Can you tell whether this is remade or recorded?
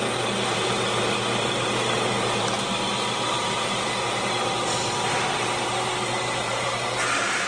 remade